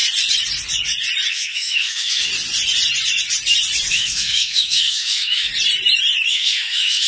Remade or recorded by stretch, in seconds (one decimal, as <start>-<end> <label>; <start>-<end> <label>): 0.0-1.3 recorded; 1.3-2.3 remade; 2.3-3.9 recorded; 3.9-5.5 remade; 5.5-6.3 recorded; 6.3-7.1 remade

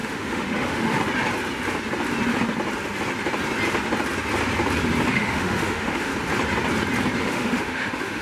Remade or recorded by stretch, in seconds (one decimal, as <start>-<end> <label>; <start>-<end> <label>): 0.0-1.0 remade; 1.0-5.1 recorded; 5.1-6.1 remade; 6.1-7.2 recorded; 7.2-8.2 remade

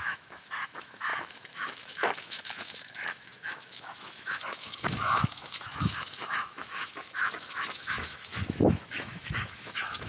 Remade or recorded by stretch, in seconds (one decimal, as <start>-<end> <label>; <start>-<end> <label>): 0.0-10.1 remade

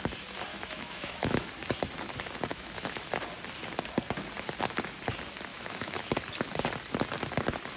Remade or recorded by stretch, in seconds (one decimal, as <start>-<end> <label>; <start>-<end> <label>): 0.0-0.5 recorded; 0.5-1.5 remade; 1.5-2.5 recorded; 2.5-3.1 remade; 3.1-5.5 recorded; 5.5-6.1 remade; 6.1-7.8 recorded

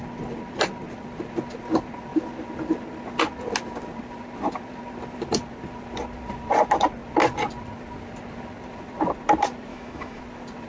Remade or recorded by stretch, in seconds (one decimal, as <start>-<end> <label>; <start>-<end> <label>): 0.0-9.7 recorded; 9.7-10.2 remade; 10.2-10.7 recorded

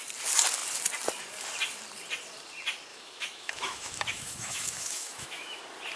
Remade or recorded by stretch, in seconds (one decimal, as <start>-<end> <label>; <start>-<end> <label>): 0.0-2.9 recorded; 2.9-5.6 remade; 5.6-6.0 recorded

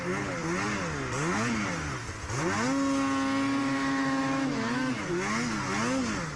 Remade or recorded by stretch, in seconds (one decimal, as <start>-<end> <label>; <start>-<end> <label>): 0.0-3.6 recorded; 3.6-4.9 remade; 4.9-6.4 recorded

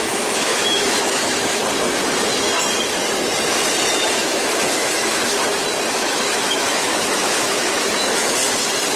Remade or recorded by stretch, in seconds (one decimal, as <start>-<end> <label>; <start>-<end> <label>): 0.0-1.6 remade; 1.6-4.2 recorded; 4.2-5.4 remade; 5.4-5.9 recorded; 5.9-8.4 remade; 8.4-9.0 recorded